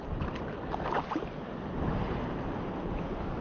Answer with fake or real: real